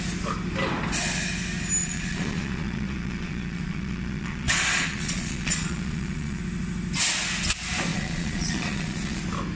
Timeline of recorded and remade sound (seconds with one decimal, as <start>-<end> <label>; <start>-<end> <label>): 0.0-1.8 recorded; 1.8-6.4 remade; 6.4-7.9 recorded; 7.9-9.2 remade; 9.2-9.6 recorded